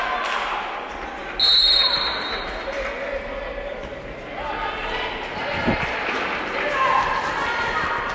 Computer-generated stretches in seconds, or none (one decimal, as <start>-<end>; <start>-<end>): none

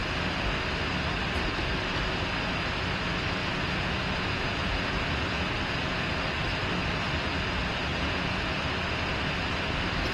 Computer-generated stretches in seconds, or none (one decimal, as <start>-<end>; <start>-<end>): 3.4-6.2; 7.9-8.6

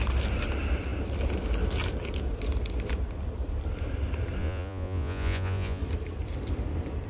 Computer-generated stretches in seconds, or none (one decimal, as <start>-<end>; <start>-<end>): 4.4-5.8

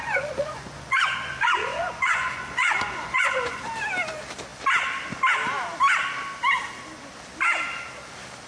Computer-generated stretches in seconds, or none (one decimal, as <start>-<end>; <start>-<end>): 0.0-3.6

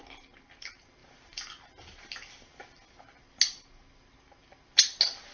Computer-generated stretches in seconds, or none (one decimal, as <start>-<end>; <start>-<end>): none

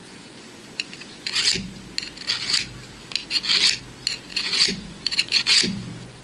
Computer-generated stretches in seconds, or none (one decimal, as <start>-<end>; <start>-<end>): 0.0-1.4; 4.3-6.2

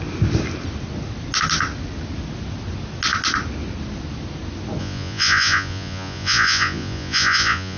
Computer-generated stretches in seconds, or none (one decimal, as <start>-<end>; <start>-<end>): 4.8-7.8

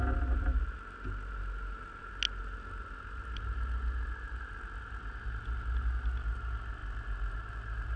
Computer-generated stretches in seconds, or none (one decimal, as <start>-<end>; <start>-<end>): none